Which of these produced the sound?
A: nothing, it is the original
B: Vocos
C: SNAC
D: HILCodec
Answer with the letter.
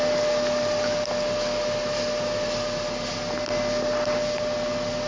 A